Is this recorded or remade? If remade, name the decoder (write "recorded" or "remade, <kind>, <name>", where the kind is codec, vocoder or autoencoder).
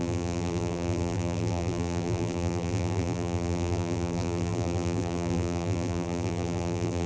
remade, vocoder, BigVGAN v2